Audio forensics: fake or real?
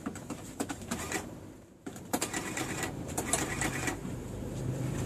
fake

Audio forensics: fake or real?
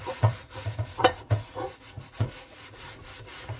fake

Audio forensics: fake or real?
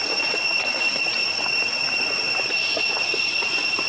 real